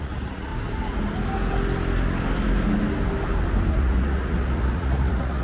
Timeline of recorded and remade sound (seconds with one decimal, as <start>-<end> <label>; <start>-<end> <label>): 0.0-0.5 remade; 0.5-3.7 recorded; 3.7-5.4 remade

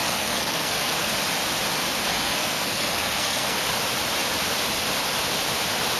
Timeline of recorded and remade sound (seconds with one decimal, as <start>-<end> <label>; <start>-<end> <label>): 0.0-1.1 remade; 1.1-2.1 recorded; 2.1-3.6 remade; 3.6-6.0 recorded

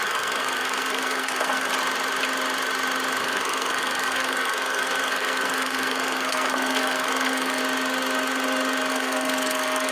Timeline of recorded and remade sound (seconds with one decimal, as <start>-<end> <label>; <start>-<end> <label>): 0.0-1.7 remade; 1.7-3.2 recorded; 3.2-7.6 remade; 7.6-8.9 recorded; 8.9-9.9 remade

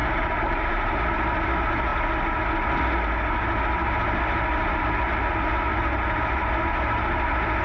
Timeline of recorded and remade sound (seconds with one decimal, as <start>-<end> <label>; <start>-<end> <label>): 0.0-1.0 remade; 1.0-5.7 recorded; 5.7-6.5 remade; 6.5-7.6 recorded

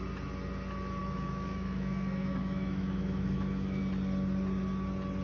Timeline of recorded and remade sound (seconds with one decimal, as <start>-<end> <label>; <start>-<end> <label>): 0.0-1.0 recorded; 1.0-3.8 remade; 3.8-5.2 recorded

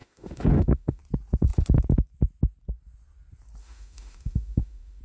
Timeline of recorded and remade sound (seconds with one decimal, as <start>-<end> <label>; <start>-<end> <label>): 0.0-1.0 remade; 1.0-3.6 recorded; 3.6-5.0 remade

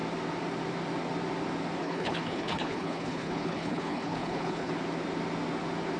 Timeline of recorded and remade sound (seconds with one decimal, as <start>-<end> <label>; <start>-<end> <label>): 0.0-1.8 recorded; 1.8-4.7 remade; 4.7-6.0 recorded